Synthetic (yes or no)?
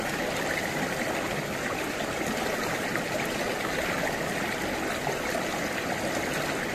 no